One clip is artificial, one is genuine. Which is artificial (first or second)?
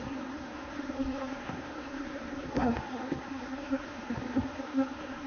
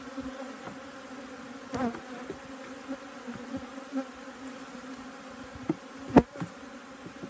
first